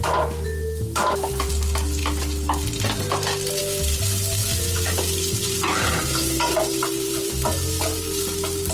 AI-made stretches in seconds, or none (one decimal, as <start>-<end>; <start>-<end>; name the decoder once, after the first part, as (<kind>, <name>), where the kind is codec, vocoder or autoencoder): 4.4-7.3 (vocoder, BigVGAN v2)